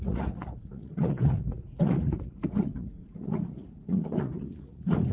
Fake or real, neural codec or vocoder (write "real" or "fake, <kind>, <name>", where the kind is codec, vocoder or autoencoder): fake, vocoder, Vocos